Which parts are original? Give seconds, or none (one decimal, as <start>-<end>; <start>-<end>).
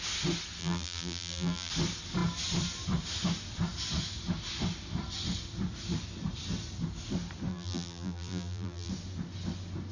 0.0-0.6; 1.7-7.5; 8.9-9.9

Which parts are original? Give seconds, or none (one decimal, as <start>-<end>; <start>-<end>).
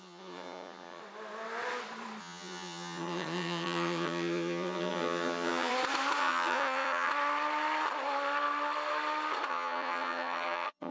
1.0-2.2; 5.7-6.2; 7.1-9.5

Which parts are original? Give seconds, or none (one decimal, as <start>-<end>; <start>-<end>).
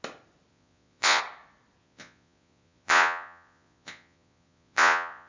0.0-0.5; 1.2-1.8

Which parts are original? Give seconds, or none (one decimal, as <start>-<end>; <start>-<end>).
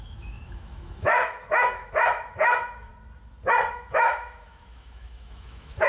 2.9-3.7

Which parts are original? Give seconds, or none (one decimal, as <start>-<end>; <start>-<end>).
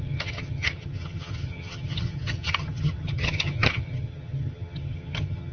none